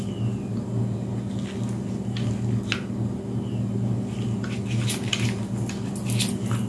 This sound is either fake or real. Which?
real